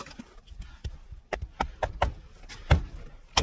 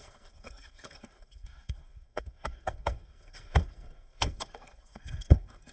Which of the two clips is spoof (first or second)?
second